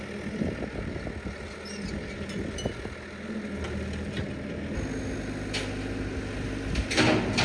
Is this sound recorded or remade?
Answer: recorded